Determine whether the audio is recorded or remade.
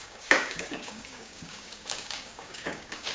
remade